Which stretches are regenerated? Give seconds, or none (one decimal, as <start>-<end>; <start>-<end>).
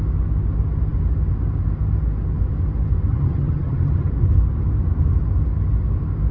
3.1-4.1